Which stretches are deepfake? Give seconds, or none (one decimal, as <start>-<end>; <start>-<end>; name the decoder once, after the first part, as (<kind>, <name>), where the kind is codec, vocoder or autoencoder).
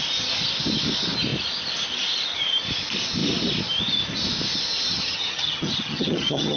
4.9-6.6 (vocoder, HiFi-GAN)